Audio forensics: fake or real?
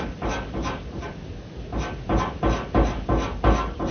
real